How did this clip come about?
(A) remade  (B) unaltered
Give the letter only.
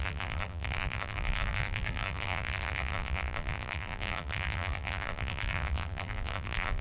A